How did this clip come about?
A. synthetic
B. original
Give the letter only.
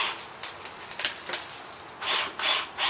B